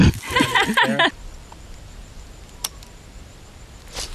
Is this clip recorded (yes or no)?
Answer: yes